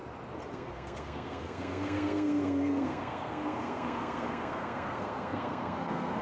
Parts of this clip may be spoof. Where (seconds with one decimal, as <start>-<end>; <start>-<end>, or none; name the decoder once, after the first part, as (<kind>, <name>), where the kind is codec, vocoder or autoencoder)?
0.5-6.2 (codec, SNAC)